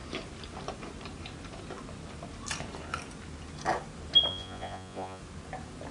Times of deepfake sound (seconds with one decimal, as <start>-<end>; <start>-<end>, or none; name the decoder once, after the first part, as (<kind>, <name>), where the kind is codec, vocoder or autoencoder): 4.3-5.2 (vocoder, Vocos)